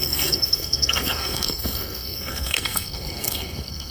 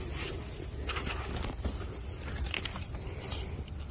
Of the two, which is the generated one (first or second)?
first